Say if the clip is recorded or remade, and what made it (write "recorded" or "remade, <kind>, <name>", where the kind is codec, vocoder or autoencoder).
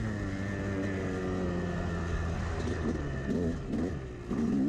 recorded